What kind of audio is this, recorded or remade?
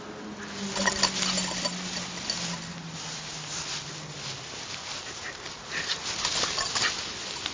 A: recorded